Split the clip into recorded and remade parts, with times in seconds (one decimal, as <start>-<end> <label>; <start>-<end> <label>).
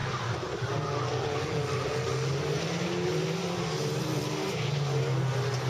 0.0-5.7 recorded